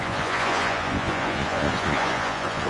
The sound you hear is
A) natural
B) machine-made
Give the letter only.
B